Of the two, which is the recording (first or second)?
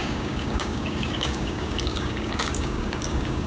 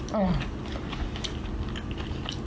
second